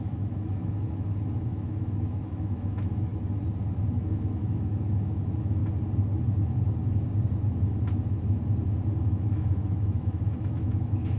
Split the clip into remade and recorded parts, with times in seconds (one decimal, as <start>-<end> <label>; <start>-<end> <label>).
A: 0.0-3.1 remade; 3.1-3.9 recorded; 3.9-5.6 remade; 5.6-9.0 recorded; 9.0-11.2 remade